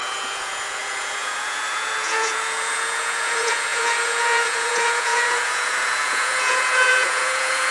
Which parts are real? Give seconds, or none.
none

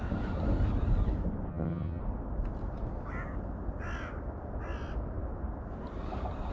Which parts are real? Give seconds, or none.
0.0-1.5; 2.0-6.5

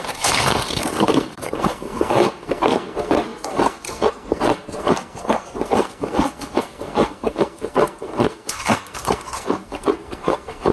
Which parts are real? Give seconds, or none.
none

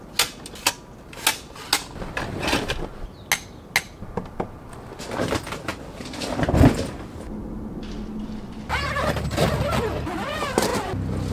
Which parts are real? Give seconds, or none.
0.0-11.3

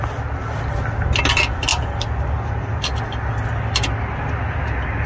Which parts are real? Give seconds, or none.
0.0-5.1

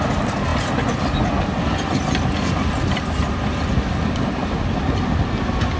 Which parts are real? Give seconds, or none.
0.0-5.8